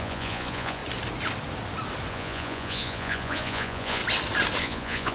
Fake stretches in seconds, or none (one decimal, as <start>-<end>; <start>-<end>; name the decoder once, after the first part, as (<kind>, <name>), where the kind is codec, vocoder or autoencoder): 0.0-0.8 (vocoder, Vocos); 2.1-4.0; 4.6-5.1

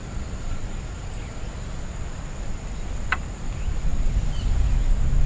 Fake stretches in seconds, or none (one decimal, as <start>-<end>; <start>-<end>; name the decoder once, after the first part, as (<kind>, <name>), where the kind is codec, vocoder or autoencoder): none

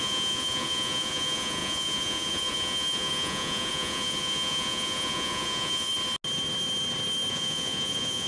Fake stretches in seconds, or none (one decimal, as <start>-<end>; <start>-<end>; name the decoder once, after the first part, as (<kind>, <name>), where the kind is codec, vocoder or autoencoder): 0.0-5.9 (vocoder, Vocos); 7.3-8.3

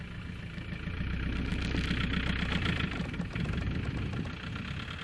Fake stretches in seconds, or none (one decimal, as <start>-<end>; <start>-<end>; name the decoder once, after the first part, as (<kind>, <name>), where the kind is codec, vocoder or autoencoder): none

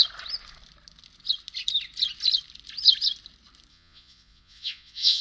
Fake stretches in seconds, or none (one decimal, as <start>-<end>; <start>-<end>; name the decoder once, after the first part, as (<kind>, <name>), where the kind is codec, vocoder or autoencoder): 3.7-5.2 (vocoder, Vocos)

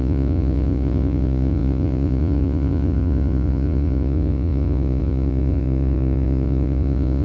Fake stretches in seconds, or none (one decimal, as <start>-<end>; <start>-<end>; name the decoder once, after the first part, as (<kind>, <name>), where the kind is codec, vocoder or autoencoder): 0.0-7.2 (vocoder, Vocos)

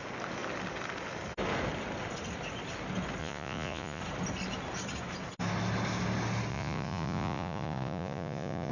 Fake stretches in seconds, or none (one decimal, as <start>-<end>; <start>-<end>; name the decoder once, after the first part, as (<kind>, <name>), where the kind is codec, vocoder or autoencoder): 3.2-4.0 (vocoder, Vocos); 6.5-8.7